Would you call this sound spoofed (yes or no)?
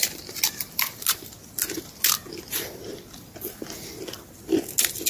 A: no